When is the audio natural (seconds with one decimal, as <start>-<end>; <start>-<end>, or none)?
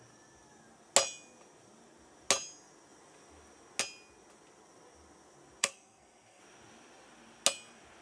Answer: 0.0-5.6; 6.4-8.0